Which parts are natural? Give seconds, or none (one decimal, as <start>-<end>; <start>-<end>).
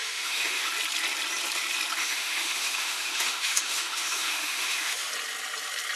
0.7-2.0; 5.1-6.0